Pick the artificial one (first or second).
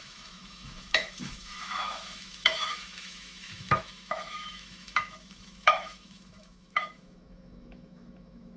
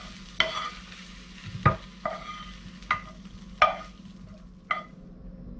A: first